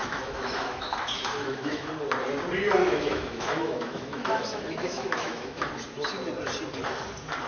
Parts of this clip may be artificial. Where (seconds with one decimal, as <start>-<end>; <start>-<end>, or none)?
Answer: 0.0-1.9; 2.8-5.7